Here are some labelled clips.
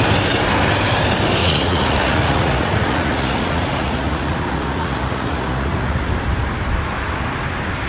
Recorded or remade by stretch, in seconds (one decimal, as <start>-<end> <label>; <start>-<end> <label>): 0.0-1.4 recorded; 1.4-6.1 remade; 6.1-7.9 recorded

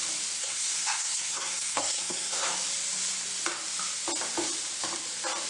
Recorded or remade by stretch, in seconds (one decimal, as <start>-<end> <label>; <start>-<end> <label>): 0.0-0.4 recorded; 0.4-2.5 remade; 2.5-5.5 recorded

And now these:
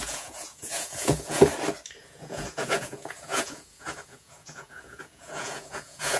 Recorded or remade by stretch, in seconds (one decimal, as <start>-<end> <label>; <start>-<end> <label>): 0.0-1.5 remade; 1.5-2.0 recorded; 2.0-6.2 remade